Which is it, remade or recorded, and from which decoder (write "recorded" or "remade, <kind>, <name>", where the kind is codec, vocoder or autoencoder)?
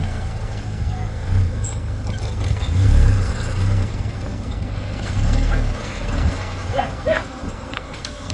remade, codec, SNAC